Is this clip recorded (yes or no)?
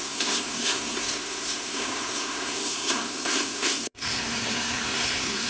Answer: no